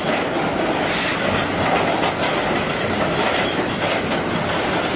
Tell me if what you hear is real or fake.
real